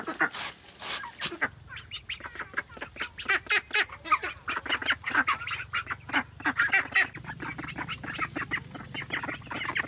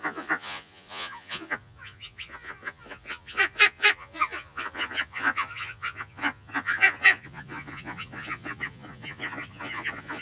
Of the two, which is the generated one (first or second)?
second